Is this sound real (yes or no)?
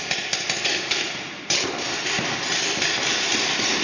yes